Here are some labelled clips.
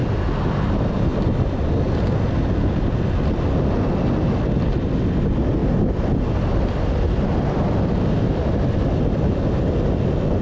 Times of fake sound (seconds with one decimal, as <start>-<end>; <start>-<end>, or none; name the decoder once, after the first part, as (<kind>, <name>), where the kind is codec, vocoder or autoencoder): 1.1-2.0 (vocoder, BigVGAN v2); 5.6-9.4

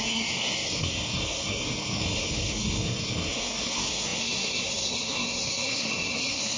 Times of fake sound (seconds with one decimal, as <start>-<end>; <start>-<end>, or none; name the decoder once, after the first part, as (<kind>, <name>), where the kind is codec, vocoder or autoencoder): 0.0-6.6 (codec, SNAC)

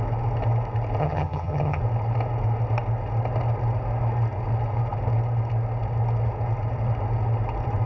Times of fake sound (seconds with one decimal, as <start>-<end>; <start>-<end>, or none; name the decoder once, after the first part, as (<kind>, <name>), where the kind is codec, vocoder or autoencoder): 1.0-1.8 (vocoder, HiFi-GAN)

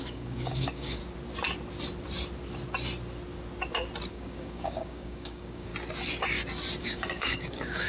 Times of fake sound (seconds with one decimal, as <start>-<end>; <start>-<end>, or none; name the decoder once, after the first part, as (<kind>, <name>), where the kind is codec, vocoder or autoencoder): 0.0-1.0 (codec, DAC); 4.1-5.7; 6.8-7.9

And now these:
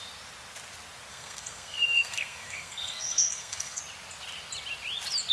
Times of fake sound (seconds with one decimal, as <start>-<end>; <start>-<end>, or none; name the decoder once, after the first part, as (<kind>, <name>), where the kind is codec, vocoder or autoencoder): 1.1-3.8 (codec, SNAC)

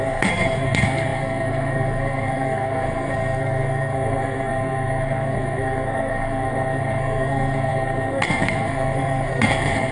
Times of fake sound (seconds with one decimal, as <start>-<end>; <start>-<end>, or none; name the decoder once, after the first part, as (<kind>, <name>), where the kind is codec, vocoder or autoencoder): 0.0-9.9 (codec, SNAC)

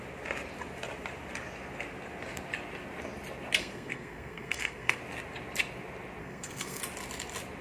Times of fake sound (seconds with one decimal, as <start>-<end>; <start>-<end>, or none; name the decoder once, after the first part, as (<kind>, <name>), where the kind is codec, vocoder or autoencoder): 3.6-5.0 (codec, SNAC); 6.2-6.8

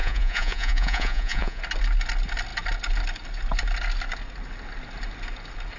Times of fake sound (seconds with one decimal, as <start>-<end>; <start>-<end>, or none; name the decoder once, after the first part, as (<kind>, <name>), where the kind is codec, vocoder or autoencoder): 0.0-1.6 (vocoder, Vocos)